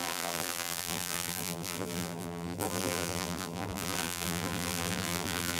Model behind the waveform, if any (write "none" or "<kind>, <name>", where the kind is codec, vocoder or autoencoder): vocoder, BigVGAN v2